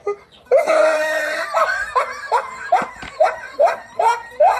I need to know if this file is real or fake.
fake